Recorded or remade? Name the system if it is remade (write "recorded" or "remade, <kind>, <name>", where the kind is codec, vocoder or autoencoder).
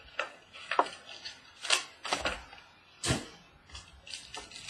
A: recorded